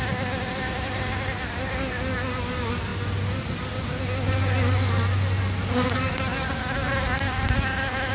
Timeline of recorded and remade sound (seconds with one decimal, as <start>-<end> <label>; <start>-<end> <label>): 0.0-8.1 recorded